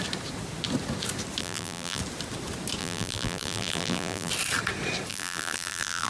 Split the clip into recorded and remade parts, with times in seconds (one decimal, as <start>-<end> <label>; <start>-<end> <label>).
0.0-1.4 recorded; 1.4-2.0 remade; 2.0-2.8 recorded; 2.8-4.3 remade; 4.3-5.1 recorded; 5.1-6.1 remade